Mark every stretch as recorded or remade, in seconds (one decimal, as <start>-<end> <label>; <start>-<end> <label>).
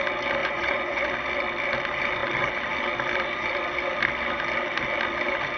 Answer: 0.0-0.4 recorded; 0.4-1.0 remade; 1.0-5.6 recorded